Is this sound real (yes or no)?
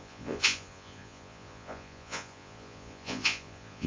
no